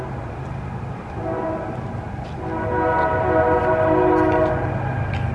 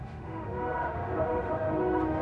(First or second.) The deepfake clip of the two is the second